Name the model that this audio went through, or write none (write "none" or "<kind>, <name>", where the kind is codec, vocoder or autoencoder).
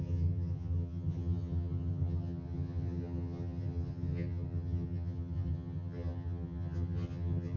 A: vocoder, HiFi-GAN